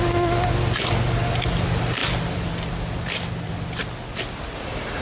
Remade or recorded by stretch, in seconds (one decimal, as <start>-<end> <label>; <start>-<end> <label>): 0.0-5.0 recorded

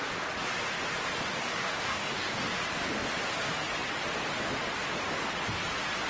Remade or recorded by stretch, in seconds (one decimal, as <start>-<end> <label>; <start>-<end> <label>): 0.0-1.4 recorded; 1.4-2.5 remade; 2.5-6.1 recorded

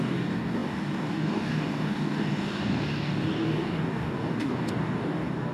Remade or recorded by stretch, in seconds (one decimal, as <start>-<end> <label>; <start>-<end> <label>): 0.0-5.5 remade